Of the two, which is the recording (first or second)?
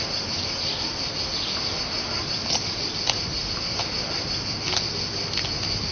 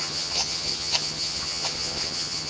first